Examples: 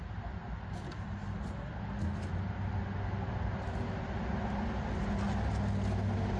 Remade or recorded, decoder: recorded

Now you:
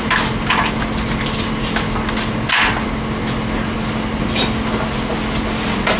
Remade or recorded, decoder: recorded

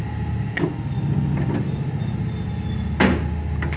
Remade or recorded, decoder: recorded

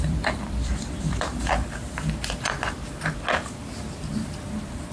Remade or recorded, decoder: remade, vocoder, BigVGAN v2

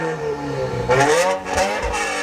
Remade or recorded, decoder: remade, vocoder, BigVGAN v2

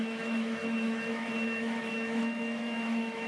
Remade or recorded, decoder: remade, autoencoder, DAC-VAE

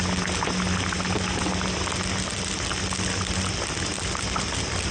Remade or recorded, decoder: recorded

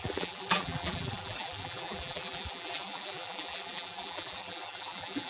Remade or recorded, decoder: remade, vocoder, BigVGAN v2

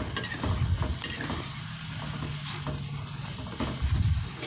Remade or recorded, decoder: recorded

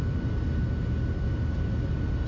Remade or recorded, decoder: recorded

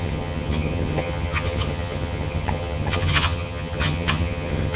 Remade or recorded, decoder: remade, vocoder, HiFi-GAN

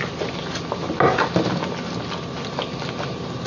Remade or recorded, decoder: recorded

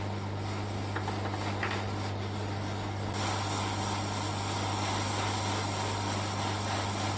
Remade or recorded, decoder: recorded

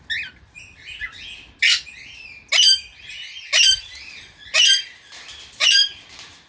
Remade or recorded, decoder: recorded